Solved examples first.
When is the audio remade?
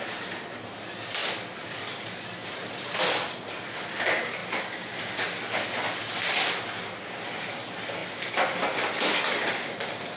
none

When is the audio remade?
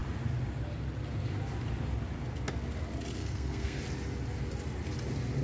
3.2-3.8 (codec, SNAC)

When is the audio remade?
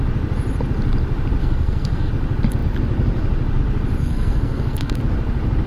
1.4-2.1 (codec, SNAC); 4.0-5.0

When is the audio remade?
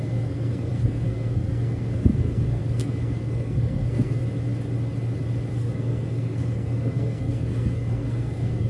0.0-4.2 (codec, SNAC); 5.5-8.7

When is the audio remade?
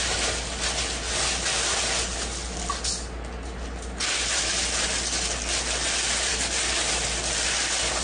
none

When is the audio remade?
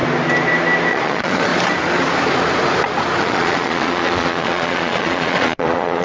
0.9-1.5 (vocoder, Vocos); 3.2-6.0